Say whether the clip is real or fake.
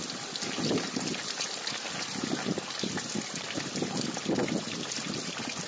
real